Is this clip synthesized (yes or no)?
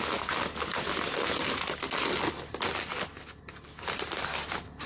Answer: no